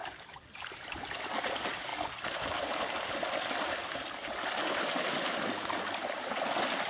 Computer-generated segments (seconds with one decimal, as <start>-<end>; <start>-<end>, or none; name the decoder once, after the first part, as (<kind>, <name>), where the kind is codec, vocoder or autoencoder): 0.0-1.0 (vocoder, BigVGAN v2)